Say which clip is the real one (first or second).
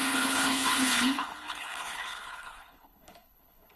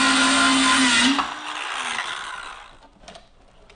second